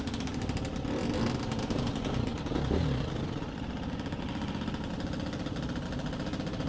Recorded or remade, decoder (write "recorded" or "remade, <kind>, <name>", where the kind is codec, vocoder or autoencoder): recorded